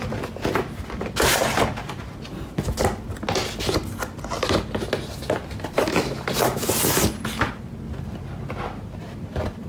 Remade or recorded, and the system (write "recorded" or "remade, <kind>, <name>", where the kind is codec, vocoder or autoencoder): recorded